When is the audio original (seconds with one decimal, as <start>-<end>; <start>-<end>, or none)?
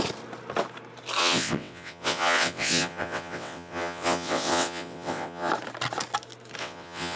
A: 0.0-1.2; 5.5-6.6